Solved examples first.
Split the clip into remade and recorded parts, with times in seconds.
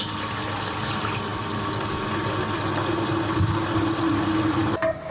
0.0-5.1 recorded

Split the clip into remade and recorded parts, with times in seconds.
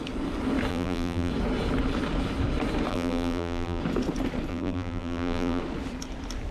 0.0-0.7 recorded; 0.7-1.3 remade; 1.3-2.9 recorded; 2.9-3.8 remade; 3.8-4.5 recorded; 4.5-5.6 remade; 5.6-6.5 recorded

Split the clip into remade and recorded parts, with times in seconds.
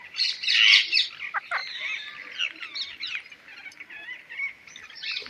0.0-5.3 recorded